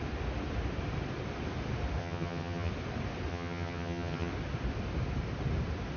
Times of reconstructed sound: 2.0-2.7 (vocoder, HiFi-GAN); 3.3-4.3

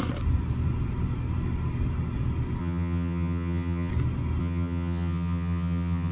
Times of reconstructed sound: 2.6-3.9 (vocoder, HiFi-GAN); 4.4-6.1

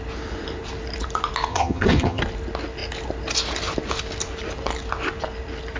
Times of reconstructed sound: 1.5-2.2 (vocoder, HiFi-GAN)

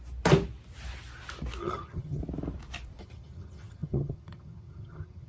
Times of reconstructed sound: 1.6-2.2 (vocoder, HiFi-GAN); 3.0-5.3

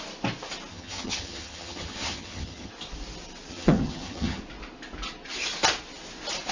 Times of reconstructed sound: 0.7-2.7 (vocoder, HiFi-GAN); 3.5-4.4